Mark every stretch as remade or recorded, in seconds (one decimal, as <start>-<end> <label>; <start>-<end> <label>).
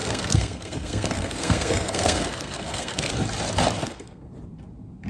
0.0-3.1 remade; 3.1-3.8 recorded; 3.8-4.3 remade; 4.3-5.1 recorded